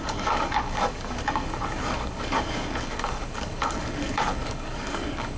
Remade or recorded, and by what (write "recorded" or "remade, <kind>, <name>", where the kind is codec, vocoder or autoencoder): remade, codec, DAC